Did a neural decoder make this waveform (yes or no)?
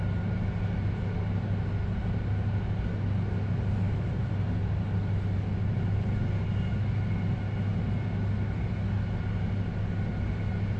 no